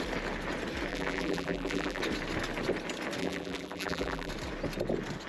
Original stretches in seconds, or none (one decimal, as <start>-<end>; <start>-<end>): 0.0-0.9; 2.0-3.2; 4.3-5.3

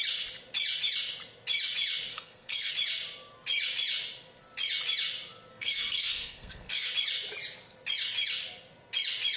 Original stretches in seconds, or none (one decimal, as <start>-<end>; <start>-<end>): 0.0-2.1; 2.7-5.5; 6.9-9.4

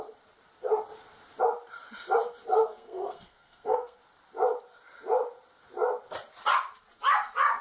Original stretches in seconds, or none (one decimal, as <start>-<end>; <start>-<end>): 0.0-2.6; 4.0-7.6

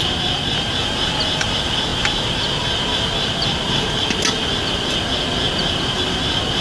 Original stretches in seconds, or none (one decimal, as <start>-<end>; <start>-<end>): 0.0-6.6

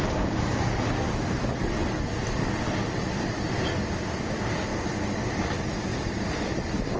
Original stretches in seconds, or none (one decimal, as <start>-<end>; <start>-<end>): 0.0-2.2; 3.7-5.9